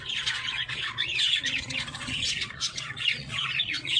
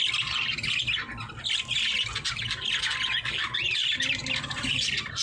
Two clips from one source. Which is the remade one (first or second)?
first